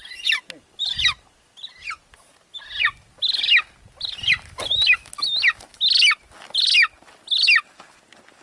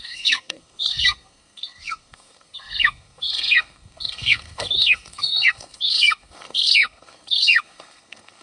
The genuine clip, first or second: first